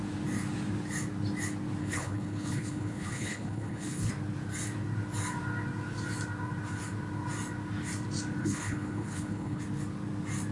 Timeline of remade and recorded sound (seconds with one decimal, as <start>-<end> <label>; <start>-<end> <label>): 0.0-1.8 recorded; 1.8-4.1 remade; 4.1-8.4 recorded; 8.4-9.6 remade; 9.6-10.5 recorded